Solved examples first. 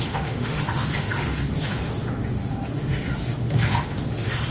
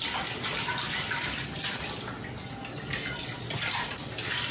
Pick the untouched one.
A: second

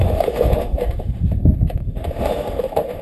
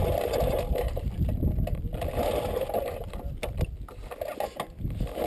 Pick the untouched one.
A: second